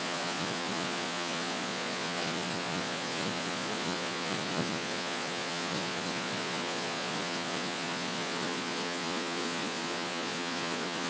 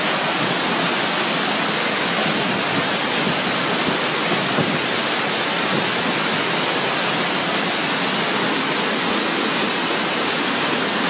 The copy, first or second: first